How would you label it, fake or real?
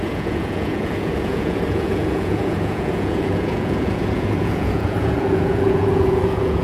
fake